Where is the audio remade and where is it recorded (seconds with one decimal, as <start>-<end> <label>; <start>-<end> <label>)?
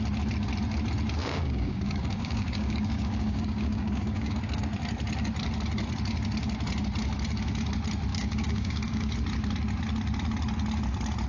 0.0-1.2 recorded; 1.2-4.4 remade; 4.4-8.1 recorded; 8.1-9.1 remade; 9.1-11.3 recorded